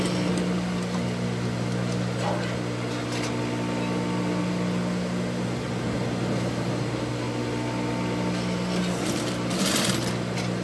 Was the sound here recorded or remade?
recorded